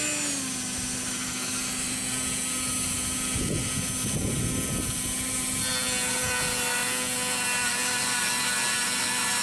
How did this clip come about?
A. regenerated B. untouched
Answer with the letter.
B